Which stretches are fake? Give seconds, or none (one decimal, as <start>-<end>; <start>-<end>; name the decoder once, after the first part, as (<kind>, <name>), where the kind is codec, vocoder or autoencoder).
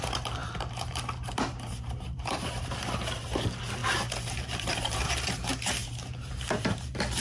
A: 0.0-7.2 (vocoder, BigVGAN v2)